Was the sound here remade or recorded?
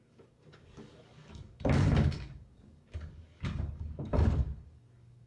remade